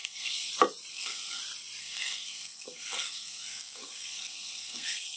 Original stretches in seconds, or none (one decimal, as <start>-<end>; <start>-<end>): 0.5-0.9; 1.4-1.8